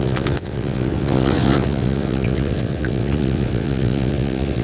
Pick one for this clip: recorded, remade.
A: remade